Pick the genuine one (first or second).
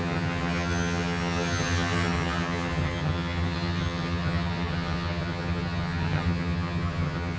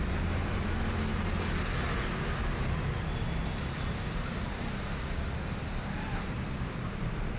second